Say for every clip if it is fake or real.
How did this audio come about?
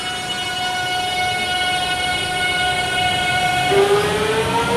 real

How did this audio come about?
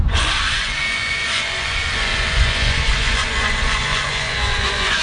fake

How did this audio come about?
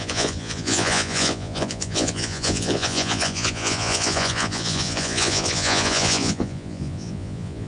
fake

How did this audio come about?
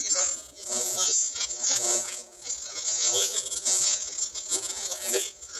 fake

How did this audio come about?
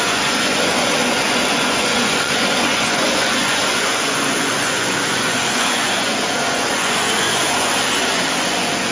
fake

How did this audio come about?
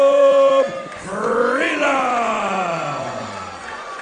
fake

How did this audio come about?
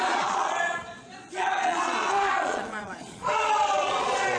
fake